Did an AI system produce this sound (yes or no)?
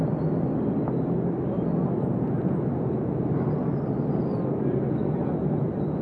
no